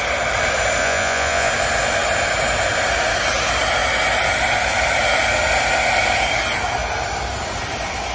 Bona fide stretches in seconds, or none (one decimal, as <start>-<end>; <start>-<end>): 0.0-0.8; 1.5-8.1